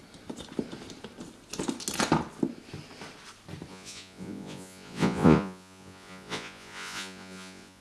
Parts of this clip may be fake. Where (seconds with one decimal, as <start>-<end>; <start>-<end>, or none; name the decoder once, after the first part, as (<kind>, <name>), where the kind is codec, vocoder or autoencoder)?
3.7-7.8 (vocoder, Vocos)